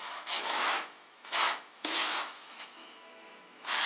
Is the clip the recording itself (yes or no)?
no